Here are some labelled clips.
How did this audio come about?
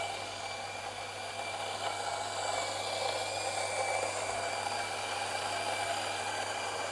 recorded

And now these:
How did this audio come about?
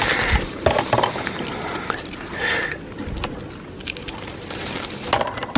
recorded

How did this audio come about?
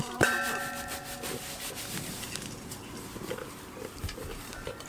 recorded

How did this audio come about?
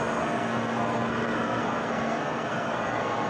remade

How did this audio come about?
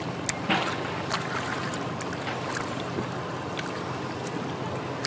recorded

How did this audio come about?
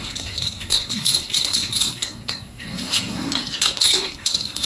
remade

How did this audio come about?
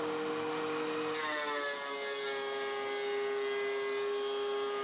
recorded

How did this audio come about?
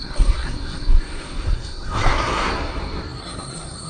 remade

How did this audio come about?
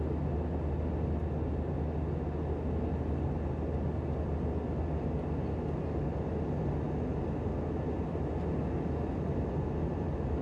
recorded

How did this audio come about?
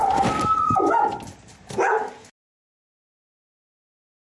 recorded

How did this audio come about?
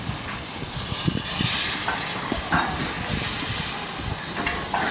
recorded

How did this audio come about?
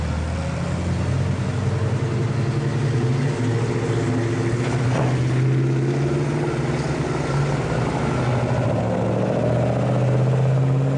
recorded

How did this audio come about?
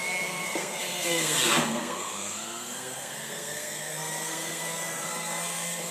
remade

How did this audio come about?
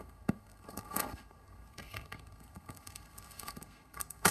remade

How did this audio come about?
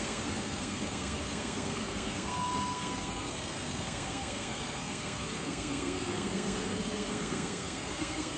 remade